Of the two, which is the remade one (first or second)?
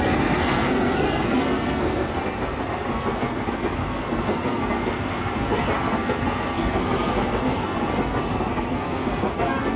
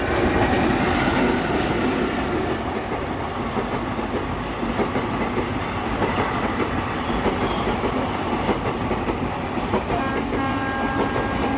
first